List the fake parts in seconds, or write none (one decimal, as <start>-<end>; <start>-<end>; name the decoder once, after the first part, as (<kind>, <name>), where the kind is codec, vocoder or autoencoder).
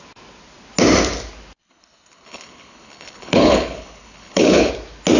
1.6-4.7 (codec, HILCodec)